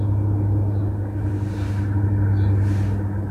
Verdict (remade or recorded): recorded